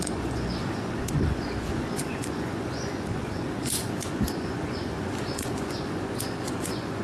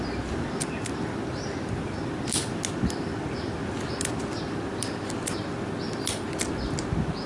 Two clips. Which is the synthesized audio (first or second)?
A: first